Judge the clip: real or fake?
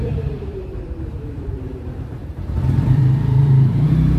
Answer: fake